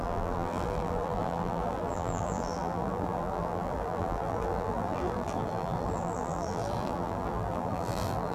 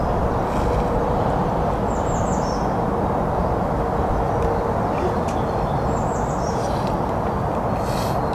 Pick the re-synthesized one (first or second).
first